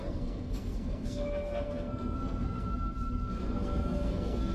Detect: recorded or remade remade